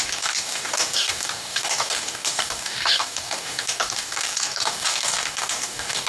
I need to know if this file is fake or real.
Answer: fake